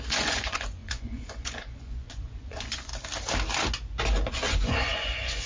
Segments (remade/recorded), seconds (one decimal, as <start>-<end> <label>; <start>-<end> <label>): 0.0-2.9 remade; 2.9-4.3 recorded; 4.3-5.5 remade